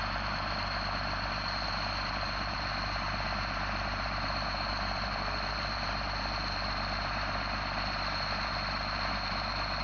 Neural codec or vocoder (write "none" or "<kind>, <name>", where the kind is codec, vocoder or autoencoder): vocoder, BigVGAN v2